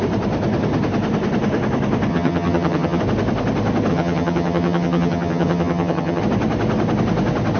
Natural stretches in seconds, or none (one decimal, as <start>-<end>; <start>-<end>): 0.0-2.1; 3.0-3.9; 6.2-7.6